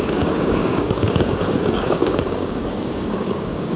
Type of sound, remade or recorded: remade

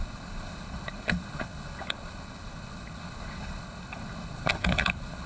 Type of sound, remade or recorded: remade